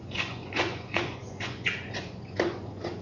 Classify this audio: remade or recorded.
remade